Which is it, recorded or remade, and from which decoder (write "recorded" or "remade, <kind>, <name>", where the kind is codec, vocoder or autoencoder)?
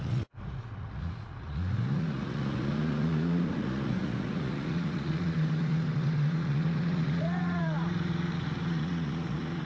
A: remade, vocoder, Vocos